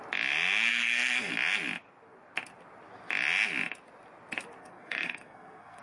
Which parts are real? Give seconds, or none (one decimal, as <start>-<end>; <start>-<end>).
0.0-0.7; 1.3-4.6